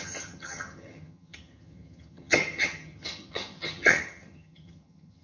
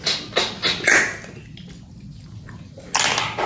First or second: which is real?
second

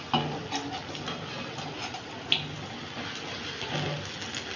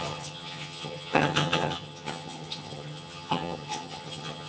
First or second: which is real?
first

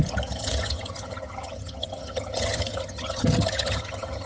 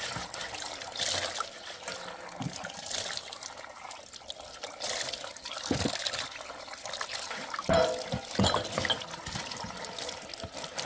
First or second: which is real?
second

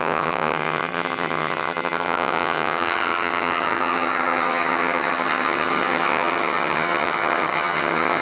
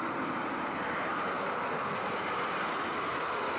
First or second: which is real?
second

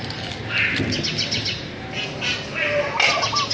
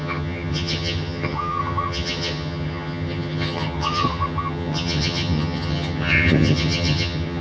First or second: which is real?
first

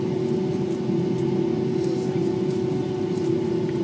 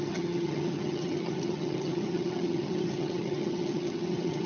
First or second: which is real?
first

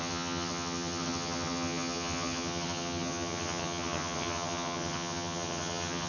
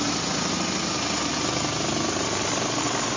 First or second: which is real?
second